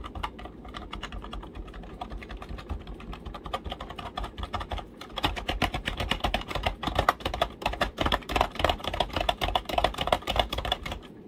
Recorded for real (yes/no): no